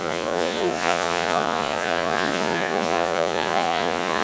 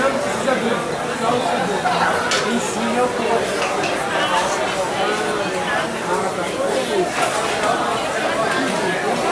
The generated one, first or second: first